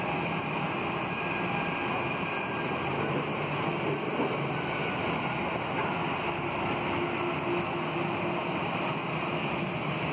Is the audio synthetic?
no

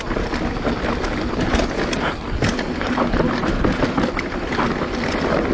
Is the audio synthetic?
no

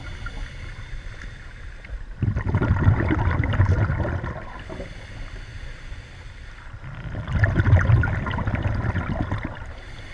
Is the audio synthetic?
no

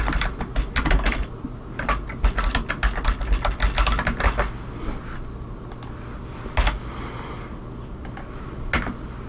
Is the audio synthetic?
no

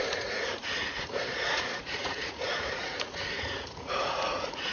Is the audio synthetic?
yes